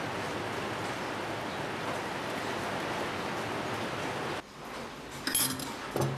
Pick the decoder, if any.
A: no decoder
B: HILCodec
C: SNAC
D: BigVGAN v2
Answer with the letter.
A